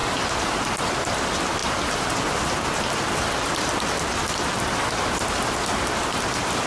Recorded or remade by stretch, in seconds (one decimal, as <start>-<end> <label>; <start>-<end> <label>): 0.0-6.7 recorded